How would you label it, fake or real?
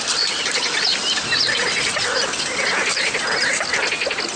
real